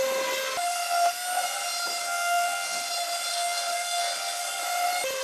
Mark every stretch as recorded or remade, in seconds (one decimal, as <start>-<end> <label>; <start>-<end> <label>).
0.0-2.0 recorded; 2.0-2.9 remade; 2.9-3.3 recorded; 3.3-4.6 remade; 4.6-5.2 recorded